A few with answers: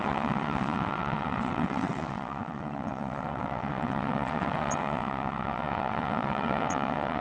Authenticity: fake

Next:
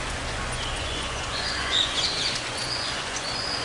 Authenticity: fake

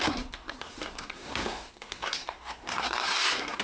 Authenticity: fake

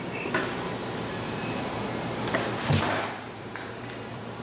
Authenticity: fake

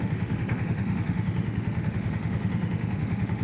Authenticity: fake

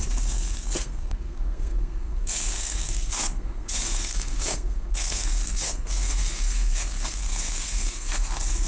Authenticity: fake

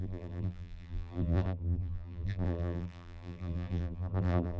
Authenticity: fake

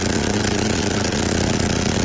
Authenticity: fake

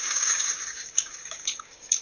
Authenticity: fake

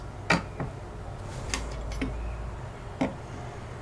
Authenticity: real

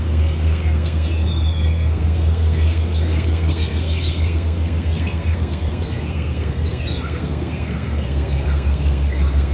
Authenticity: fake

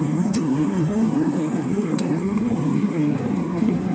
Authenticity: fake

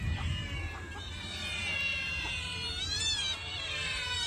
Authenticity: fake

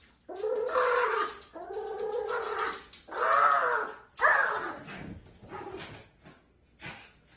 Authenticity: real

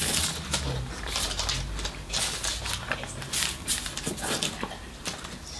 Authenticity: real